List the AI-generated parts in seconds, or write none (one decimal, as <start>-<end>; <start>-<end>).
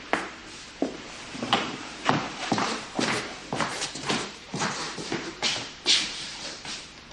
0.0-7.1